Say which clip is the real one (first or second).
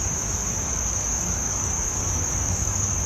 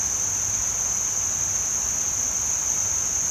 second